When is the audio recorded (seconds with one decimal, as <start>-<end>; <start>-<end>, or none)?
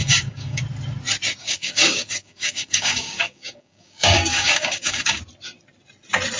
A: 0.6-1.4; 5.2-6.4